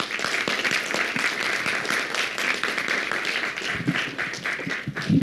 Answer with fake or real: fake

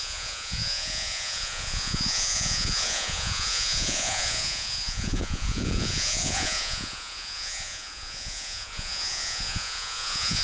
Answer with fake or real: fake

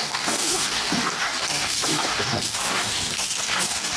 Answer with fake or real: fake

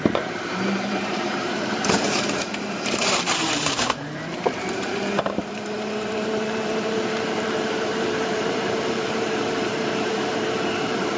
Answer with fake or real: fake